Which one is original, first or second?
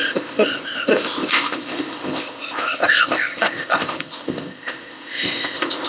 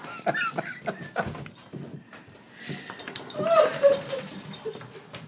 second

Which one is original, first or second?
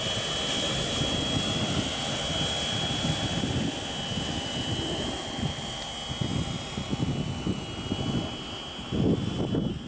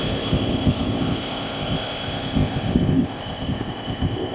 first